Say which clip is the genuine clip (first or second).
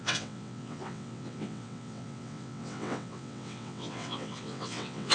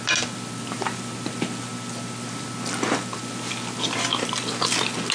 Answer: second